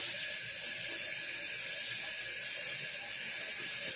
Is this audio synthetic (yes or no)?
no